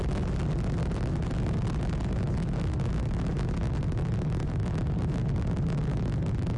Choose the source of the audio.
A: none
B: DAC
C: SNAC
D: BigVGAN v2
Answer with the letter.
A